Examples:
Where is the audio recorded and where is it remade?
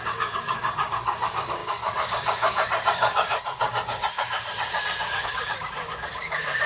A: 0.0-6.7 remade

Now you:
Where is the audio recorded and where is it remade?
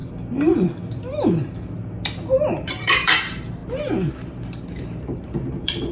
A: 0.0-2.5 recorded; 2.5-5.9 remade